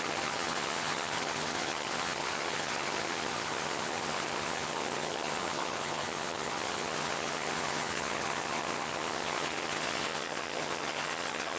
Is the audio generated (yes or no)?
yes